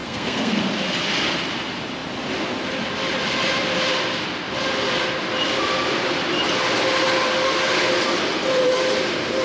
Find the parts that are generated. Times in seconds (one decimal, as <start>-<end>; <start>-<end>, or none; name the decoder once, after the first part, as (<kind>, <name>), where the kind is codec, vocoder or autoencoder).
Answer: 0.0-0.6 (codec, SNAC)